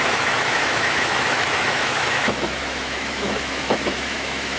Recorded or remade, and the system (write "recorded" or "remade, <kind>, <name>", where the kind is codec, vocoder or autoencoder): remade, autoencoder, DAC-VAE